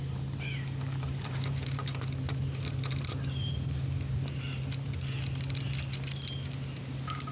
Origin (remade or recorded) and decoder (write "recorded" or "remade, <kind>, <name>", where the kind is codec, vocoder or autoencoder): remade, vocoder, BigVGAN v2